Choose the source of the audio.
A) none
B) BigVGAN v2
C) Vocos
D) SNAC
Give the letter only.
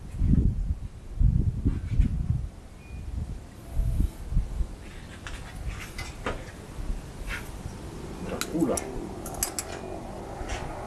A